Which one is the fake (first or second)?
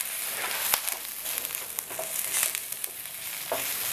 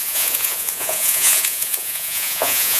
second